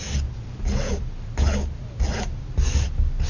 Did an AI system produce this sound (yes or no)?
no